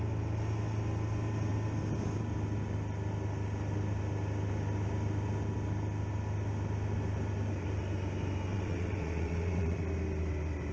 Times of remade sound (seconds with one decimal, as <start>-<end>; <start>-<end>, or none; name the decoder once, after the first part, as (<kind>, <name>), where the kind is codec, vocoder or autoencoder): 8.5-9.8 (vocoder, WaveNeXt)